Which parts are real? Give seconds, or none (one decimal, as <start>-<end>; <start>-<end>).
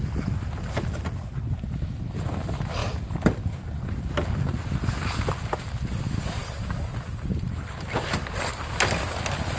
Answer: 0.0-9.6